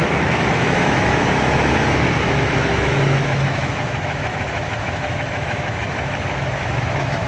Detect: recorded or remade remade